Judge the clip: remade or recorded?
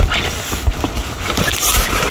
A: recorded